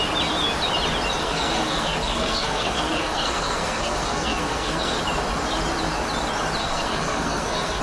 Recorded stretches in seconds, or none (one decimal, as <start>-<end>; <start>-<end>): 0.0-1.2; 5.0-6.6